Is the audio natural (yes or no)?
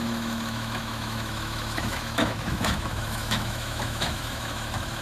no